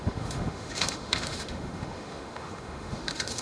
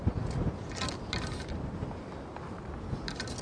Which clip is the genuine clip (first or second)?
second